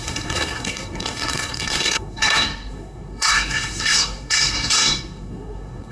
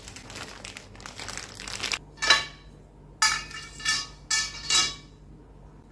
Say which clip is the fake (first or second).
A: first